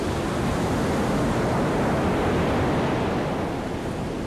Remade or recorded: recorded